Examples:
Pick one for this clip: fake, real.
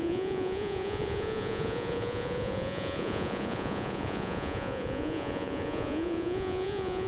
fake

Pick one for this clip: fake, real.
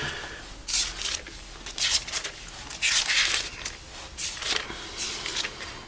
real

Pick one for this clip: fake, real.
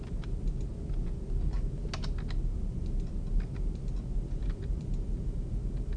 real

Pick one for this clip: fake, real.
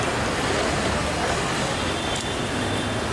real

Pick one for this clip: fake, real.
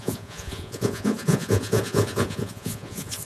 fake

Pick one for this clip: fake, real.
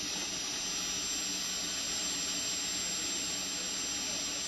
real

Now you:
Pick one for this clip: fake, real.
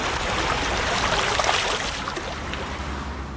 real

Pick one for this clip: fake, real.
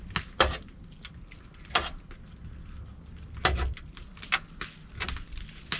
real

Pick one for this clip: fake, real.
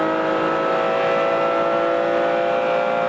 real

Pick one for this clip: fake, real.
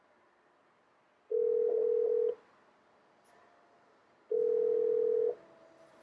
real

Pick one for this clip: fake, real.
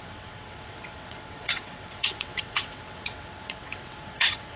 fake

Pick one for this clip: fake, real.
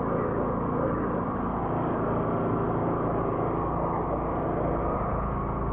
real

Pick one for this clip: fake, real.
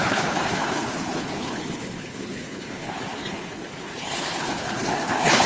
fake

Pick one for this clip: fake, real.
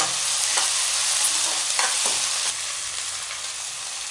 real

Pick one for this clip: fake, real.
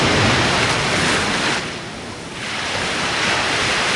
fake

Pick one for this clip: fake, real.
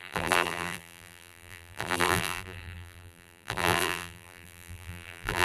fake